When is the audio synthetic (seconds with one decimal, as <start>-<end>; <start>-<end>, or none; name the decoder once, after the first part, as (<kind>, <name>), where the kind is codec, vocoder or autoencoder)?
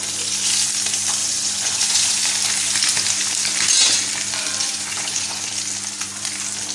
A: 1.2-2.2 (vocoder, Vocos); 4.6-5.5